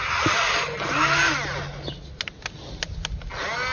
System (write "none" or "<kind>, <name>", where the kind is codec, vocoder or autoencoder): none